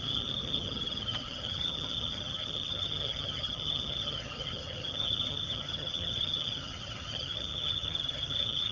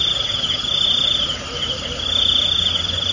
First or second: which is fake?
first